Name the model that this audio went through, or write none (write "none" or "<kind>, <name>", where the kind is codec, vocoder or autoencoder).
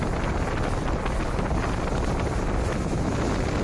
none